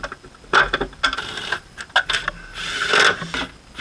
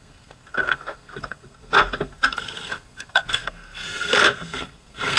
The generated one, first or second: second